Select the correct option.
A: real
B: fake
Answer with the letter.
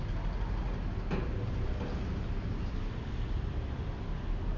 A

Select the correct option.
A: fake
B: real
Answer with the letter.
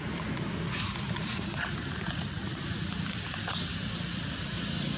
B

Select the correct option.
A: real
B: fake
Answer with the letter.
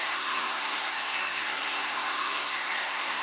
B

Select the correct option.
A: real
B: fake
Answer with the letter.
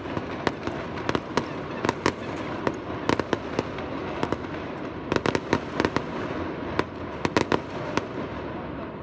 A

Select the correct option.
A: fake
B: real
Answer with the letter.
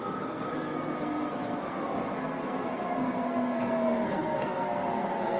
A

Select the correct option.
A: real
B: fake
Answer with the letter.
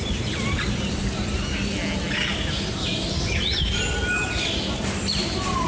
A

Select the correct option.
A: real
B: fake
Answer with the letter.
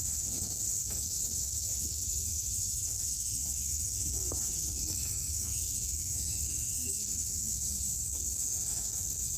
B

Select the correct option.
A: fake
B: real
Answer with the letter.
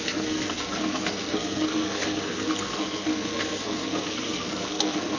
A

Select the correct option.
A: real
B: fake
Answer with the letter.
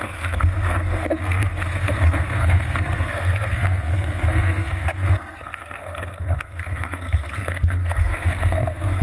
B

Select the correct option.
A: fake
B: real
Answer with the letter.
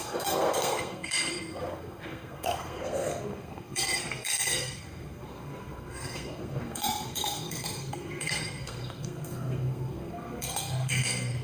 A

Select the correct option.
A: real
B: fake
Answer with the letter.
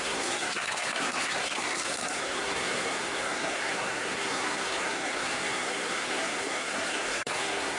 B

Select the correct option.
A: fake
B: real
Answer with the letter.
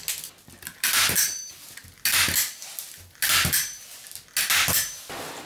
B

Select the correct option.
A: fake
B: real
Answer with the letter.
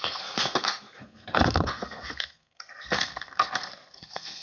A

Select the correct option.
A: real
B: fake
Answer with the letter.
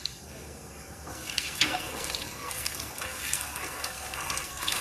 B